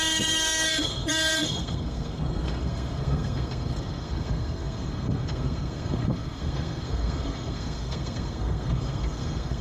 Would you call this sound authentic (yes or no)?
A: no